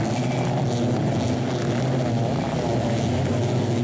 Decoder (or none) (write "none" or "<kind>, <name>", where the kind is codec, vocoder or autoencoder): none